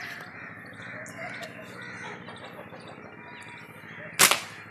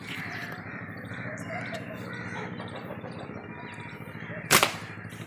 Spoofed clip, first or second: second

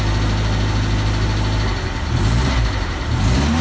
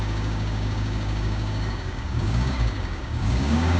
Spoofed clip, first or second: second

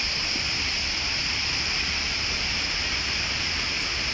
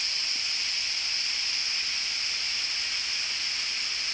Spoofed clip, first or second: first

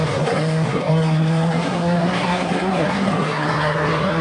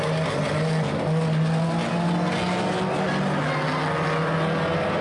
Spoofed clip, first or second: first